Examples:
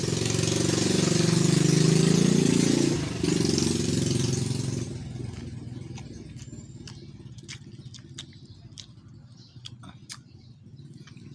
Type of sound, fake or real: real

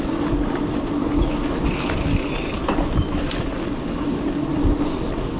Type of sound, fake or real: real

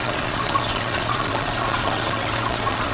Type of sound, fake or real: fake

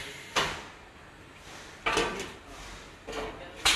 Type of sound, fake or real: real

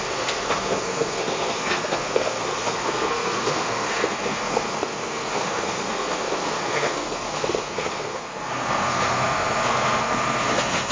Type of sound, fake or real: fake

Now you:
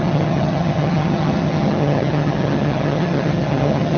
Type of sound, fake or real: fake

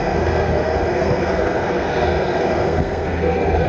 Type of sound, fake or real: fake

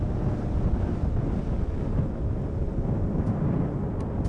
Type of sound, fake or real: real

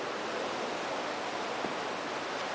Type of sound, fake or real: real